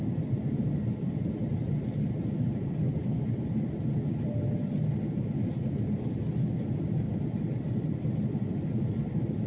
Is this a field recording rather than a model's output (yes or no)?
yes